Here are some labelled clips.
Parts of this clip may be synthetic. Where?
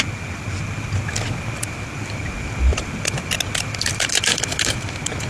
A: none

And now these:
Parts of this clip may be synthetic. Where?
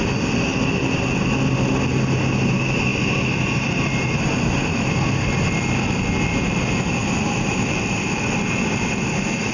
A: 2.9-4.9 (vocoder, BigVGAN v2); 7.0-8.2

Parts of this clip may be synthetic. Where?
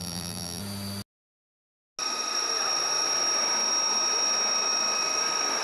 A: 0.0-0.6 (vocoder, BigVGAN v2)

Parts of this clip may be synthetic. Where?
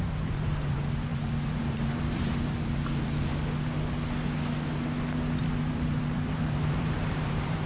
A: 0.0-3.3 (vocoder, BigVGAN v2); 5.4-7.7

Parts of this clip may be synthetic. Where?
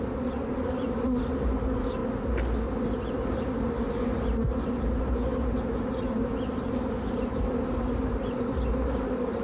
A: 0.0-2.0 (vocoder, BigVGAN v2); 3.1-9.4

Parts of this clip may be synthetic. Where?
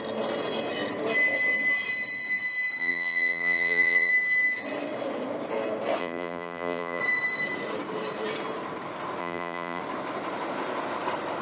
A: 2.8-4.1 (vocoder, BigVGAN v2); 6.0-7.0; 9.2-9.8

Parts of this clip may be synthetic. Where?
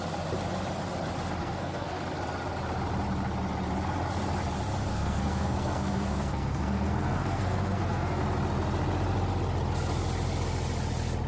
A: 1.4-2.0 (codec, SNAC); 4.9-8.2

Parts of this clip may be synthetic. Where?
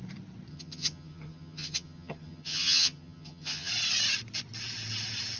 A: 0.5-3.7 (vocoder, HiFi-GAN)